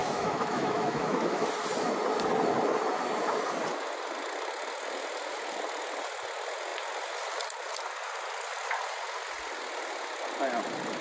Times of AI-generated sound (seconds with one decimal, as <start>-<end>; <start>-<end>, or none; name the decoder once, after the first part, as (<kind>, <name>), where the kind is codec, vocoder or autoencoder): 0.0-1.5 (autoencoder, DAC-VAE)

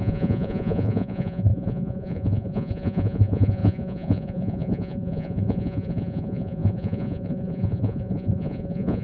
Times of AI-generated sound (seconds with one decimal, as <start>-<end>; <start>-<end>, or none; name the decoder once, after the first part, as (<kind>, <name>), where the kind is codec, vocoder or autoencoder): 0.0-9.0 (vocoder, Vocos)

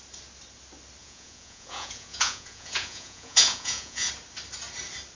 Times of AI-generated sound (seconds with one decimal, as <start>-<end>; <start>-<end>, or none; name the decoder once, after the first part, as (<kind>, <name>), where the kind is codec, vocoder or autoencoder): 1.0-4.1 (vocoder, Vocos)

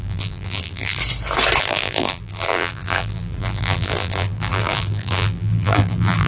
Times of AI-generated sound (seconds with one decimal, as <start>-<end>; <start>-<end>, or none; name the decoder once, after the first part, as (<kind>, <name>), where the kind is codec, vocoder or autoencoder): 0.0-1.0 (vocoder, BigVGAN v2); 1.6-6.3